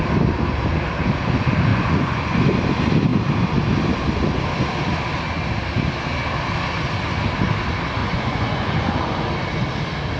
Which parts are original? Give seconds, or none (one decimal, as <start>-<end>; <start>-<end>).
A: 0.0-1.7; 2.4-8.0; 9.3-10.2